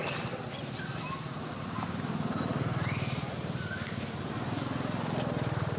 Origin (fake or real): real